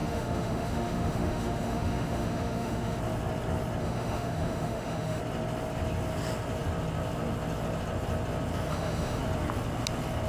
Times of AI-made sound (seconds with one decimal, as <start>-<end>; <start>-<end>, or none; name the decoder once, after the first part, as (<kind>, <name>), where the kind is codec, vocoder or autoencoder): 0.0-3.0 (autoencoder, DAC-VAE); 3.8-5.2; 8.7-9.2